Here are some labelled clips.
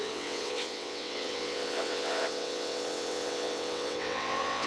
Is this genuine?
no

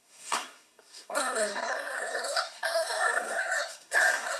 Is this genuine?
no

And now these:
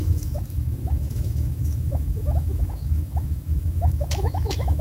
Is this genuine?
no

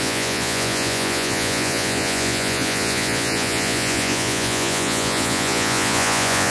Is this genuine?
no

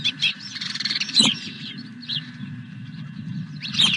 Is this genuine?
no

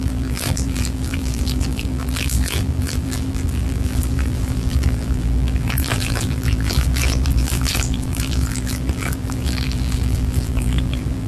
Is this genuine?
no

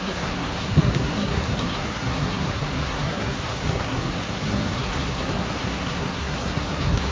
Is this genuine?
no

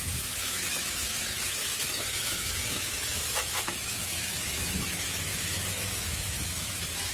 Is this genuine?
no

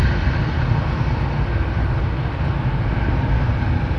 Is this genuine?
yes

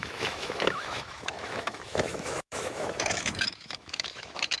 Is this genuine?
no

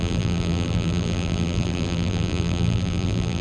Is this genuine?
no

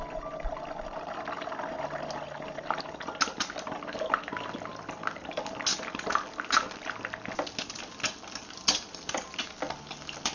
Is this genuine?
yes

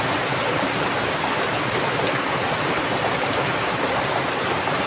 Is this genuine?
yes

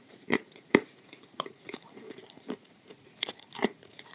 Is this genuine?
no